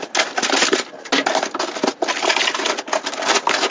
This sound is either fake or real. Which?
real